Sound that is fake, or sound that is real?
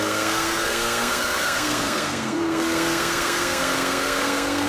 fake